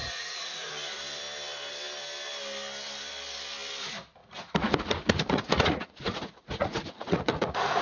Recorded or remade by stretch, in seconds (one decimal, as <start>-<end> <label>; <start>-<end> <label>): 0.0-0.7 remade; 0.7-4.2 recorded; 4.2-7.8 remade